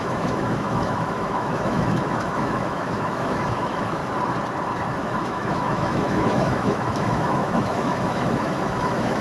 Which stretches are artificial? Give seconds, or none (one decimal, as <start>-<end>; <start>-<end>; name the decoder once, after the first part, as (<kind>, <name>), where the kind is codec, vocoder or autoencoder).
0.0-4.0 (autoencoder, DAC-VAE); 5.0-9.2